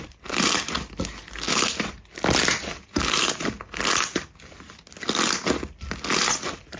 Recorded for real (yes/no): yes